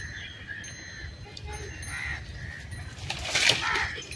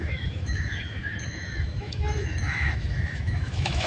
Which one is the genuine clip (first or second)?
first